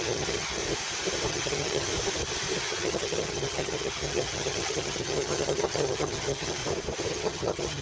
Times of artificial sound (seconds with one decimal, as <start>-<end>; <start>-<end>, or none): 0.0-0.6; 1.3-1.9; 2.6-6.6; 7.1-7.8